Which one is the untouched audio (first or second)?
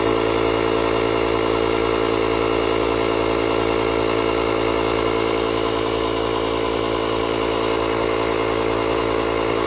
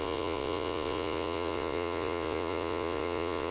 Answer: first